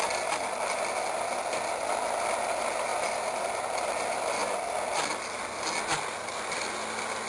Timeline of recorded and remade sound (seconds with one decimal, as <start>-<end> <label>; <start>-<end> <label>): 0.0-7.3 recorded